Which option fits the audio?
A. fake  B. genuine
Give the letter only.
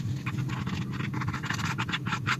B